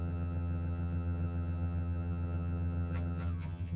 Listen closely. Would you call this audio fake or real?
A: fake